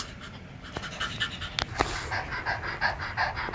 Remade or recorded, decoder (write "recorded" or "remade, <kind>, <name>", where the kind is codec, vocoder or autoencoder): recorded